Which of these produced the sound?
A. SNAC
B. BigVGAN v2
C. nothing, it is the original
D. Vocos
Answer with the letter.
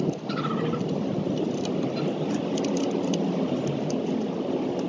C